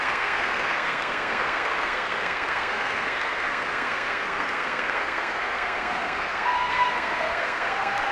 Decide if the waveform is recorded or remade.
remade